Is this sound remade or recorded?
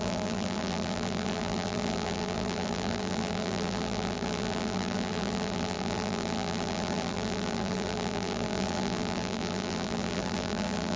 remade